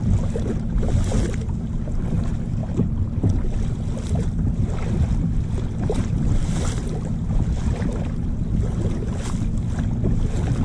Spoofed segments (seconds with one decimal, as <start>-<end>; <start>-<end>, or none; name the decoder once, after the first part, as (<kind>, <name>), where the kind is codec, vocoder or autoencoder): none